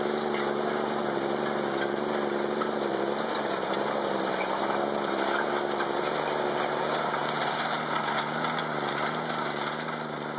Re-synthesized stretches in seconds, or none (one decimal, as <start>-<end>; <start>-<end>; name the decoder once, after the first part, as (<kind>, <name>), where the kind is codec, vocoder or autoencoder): none